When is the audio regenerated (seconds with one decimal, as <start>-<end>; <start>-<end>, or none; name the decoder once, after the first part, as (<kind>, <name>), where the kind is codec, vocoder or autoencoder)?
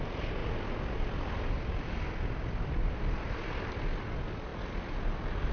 none